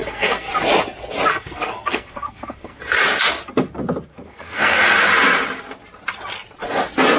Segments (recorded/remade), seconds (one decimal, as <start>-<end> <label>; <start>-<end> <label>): 0.0-0.5 remade; 0.5-1.3 recorded; 1.3-2.8 remade; 2.8-4.1 recorded; 4.1-4.8 remade; 4.8-7.2 recorded